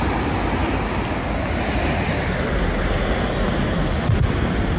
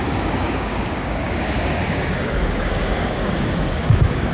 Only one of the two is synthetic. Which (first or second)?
second